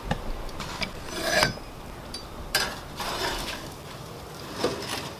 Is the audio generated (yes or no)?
yes